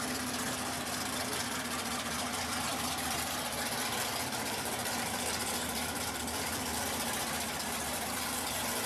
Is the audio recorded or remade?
remade